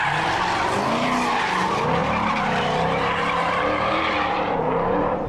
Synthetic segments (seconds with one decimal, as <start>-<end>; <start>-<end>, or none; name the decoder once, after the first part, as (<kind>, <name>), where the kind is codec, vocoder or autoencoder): 2.0-5.3 (vocoder, BigVGAN v2)